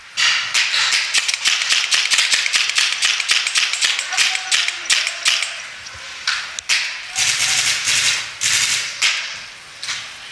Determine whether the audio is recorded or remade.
recorded